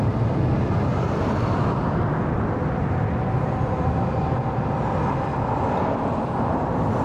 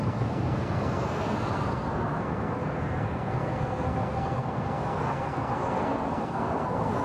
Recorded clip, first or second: first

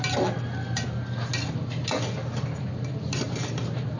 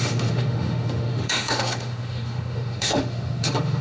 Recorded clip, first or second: first